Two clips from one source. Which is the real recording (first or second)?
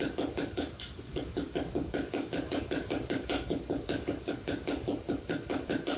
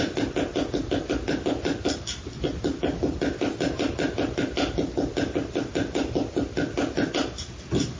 second